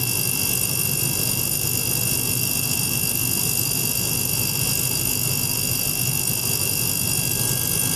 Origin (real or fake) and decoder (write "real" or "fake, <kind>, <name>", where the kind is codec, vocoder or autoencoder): fake, vocoder, BigVGAN v2